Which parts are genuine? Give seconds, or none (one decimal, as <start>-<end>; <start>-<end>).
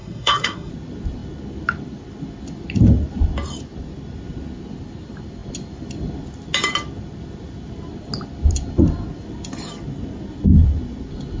0.7-11.4